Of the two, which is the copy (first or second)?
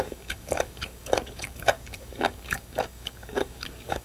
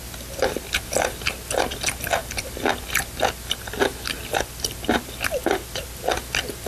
first